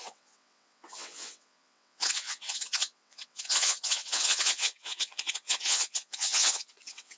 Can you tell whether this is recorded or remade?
remade